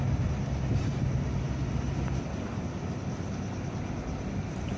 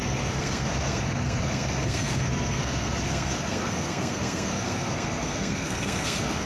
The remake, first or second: second